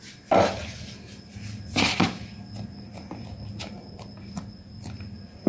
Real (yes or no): yes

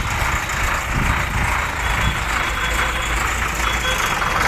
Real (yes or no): yes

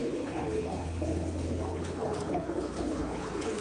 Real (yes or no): no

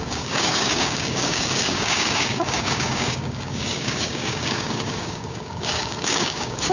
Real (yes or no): no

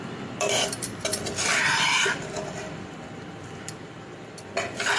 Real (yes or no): no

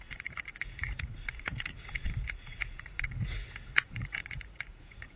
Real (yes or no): no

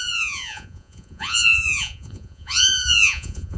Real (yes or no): no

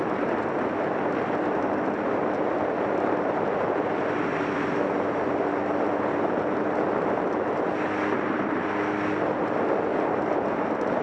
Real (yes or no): yes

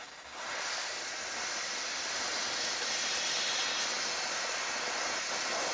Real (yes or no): yes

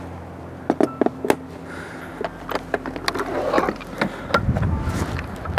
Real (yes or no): yes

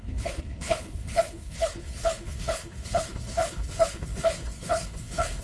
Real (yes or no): no